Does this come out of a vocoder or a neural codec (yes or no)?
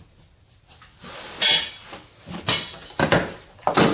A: no